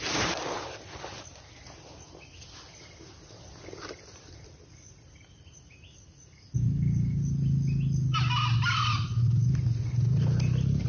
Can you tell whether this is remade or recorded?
recorded